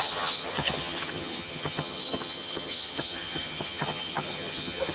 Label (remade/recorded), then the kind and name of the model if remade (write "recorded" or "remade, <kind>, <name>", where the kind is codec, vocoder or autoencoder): remade, vocoder, HiFi-GAN